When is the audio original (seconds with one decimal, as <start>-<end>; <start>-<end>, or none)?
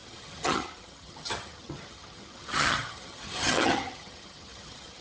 none